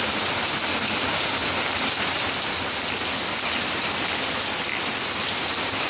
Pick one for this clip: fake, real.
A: real